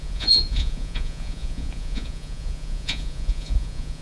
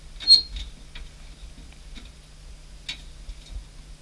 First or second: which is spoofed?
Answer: first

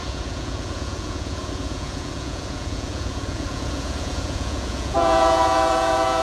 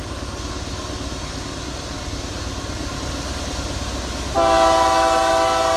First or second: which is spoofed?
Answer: first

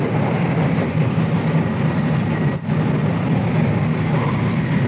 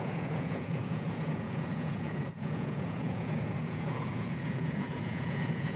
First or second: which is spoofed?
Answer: second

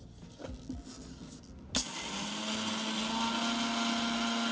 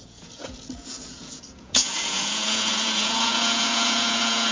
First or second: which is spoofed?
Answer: second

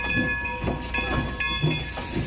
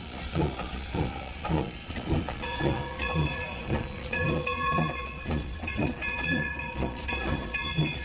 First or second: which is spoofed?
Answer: second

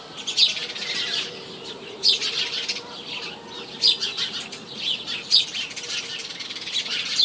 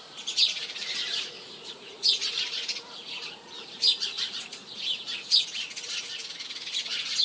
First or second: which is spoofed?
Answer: second